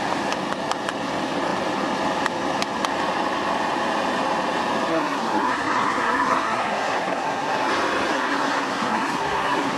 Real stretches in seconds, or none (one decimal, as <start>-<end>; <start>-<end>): 0.0-4.9; 7.7-8.1